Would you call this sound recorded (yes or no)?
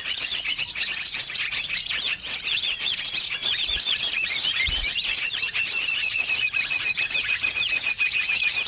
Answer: no